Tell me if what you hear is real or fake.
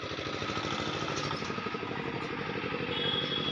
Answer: real